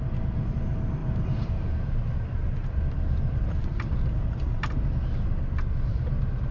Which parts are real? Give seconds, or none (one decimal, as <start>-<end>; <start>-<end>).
0.0-1.0; 4.9-5.9